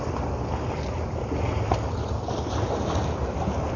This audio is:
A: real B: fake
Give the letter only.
A